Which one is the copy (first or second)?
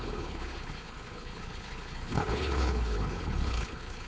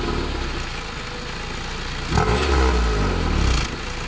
first